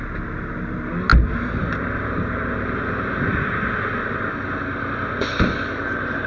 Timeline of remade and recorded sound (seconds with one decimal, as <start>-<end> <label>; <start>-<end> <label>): 0.0-6.3 recorded